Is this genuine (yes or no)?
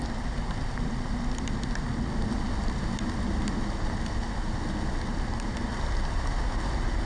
yes